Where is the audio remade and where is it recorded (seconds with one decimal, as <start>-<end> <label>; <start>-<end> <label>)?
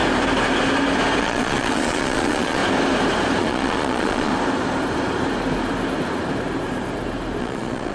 0.0-1.2 recorded; 1.2-2.6 remade; 2.6-3.4 recorded; 3.4-4.3 remade; 4.3-7.4 recorded; 7.4-7.9 remade